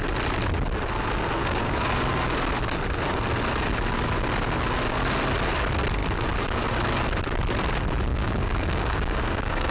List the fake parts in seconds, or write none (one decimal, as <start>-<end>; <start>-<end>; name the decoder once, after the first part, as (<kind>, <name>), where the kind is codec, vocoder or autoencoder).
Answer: 1.4-1.9 (codec, DAC); 8.1-9.7